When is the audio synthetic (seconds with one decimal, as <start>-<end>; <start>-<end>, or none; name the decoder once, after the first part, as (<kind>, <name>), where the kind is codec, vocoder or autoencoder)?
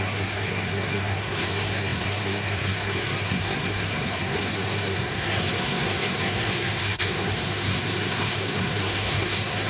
0.0-9.7 (codec, SNAC)